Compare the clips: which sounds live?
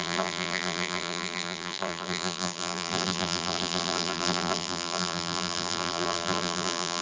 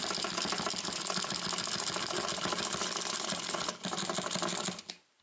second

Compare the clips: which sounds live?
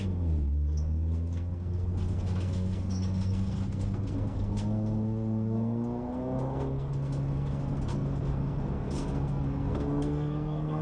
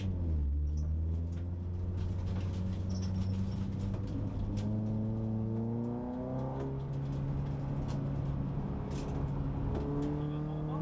second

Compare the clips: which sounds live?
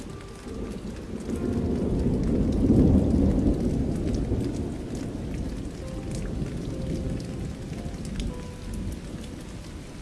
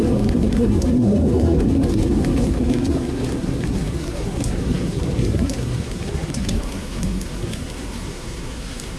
first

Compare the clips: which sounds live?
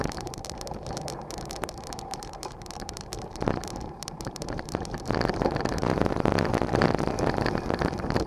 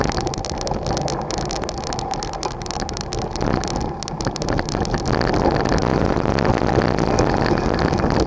second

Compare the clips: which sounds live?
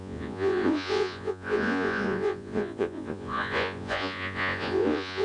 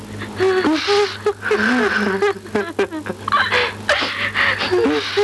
second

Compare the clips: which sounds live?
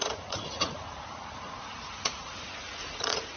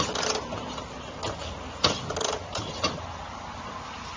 second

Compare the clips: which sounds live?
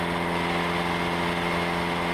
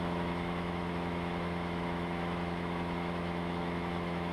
first